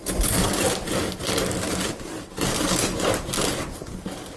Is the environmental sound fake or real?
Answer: real